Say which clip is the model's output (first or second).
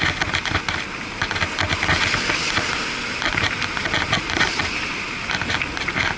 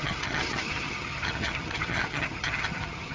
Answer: second